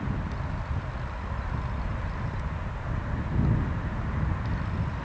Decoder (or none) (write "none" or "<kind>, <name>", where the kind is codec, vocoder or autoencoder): none